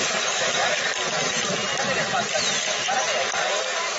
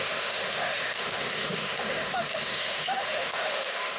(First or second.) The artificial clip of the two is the second